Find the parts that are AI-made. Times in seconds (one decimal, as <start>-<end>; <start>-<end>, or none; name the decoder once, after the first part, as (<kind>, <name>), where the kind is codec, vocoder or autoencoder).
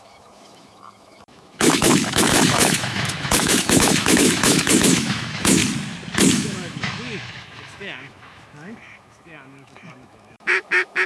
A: 0.0-5.6 (autoencoder, DAC-VAE); 6.3-11.1